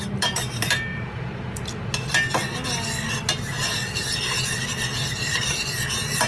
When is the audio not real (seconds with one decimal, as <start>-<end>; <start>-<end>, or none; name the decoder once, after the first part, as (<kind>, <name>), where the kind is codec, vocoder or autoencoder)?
0.9-1.8 (vocoder, BigVGAN v2)